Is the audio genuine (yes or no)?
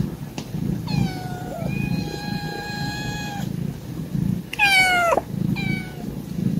yes